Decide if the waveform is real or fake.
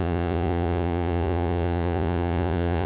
fake